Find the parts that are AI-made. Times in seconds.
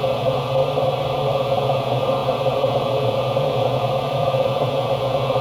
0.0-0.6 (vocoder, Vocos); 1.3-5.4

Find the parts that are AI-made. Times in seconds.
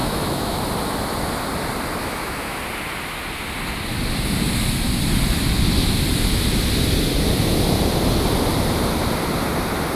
0.0-0.6 (autoencoder, DAC-VAE); 2.0-2.6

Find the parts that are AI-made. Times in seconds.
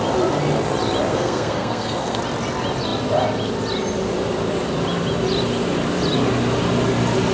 1.1-2.2 (codec, SNAC)